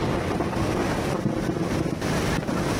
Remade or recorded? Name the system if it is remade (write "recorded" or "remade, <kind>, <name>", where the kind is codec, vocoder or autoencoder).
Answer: recorded